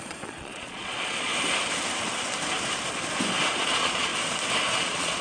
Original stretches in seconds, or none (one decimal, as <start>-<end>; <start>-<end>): 1.3-3.6; 4.1-4.8